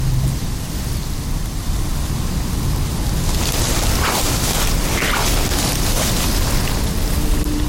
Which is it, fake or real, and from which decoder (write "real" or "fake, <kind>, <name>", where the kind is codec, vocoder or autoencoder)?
real